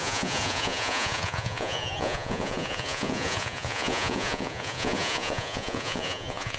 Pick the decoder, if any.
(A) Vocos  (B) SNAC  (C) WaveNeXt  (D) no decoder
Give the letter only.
A